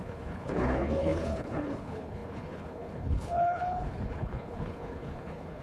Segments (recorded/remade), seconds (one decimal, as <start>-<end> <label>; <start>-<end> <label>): 0.0-5.6 remade